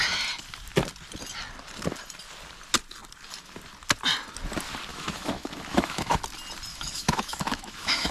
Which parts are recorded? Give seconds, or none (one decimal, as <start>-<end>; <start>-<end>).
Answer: 0.0-4.9; 6.2-6.7